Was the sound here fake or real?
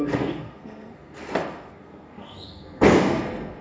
fake